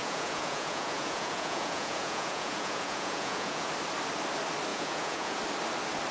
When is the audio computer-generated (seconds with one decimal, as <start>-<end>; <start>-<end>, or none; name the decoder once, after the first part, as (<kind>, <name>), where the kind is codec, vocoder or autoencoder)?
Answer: 0.0-3.7 (vocoder, Vocos); 4.7-5.4